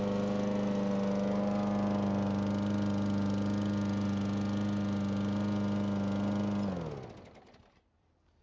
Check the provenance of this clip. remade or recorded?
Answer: recorded